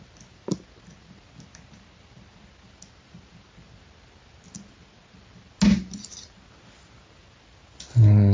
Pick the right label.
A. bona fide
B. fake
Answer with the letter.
A